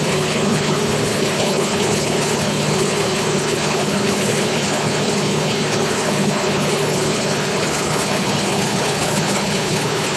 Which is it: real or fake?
fake